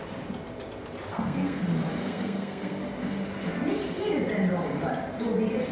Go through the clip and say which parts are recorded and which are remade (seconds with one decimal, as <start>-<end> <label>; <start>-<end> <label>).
0.0-1.1 recorded; 1.1-1.6 remade; 1.6-2.0 recorded; 2.0-2.8 remade; 2.8-5.7 recorded